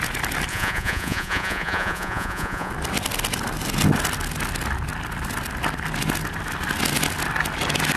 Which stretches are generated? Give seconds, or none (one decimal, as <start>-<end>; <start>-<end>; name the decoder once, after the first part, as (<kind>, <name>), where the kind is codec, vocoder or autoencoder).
0.5-2.7 (vocoder, Vocos)